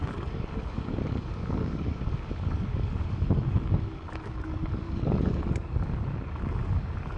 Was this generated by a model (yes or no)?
yes